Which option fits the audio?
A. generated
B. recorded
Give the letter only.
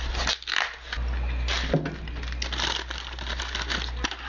B